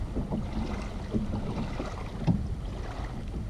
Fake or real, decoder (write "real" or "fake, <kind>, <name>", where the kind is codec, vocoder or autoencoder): real